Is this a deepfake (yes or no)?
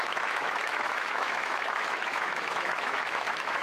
yes